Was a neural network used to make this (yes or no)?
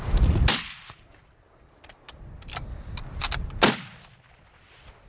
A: no